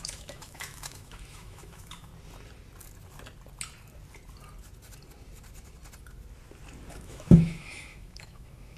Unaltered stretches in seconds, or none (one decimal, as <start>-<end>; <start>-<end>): 2.1-6.9